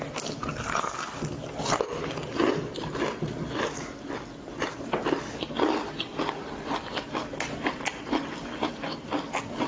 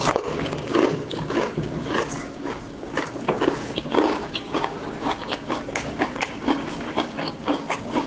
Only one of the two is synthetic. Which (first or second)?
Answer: second